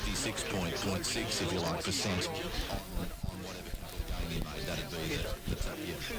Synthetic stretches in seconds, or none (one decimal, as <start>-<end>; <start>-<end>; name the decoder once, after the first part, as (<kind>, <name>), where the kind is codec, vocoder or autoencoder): none